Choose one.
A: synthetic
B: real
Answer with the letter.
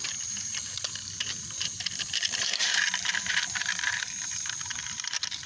A